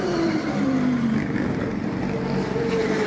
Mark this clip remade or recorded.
recorded